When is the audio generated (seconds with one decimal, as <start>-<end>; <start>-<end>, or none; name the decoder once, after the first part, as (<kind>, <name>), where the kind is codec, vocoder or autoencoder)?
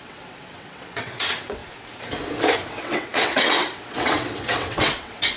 0.0-1.6 (vocoder, WaveNeXt); 2.7-5.4